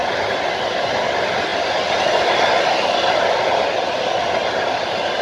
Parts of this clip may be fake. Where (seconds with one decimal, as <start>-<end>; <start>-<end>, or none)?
none

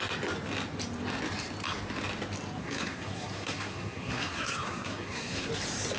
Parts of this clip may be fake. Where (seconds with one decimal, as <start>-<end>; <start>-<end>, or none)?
2.6-5.5